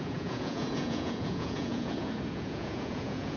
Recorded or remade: remade